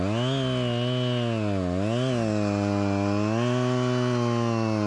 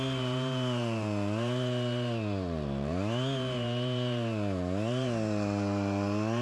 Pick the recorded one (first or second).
first